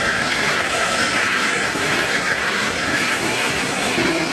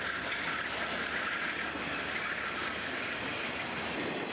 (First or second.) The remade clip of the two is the first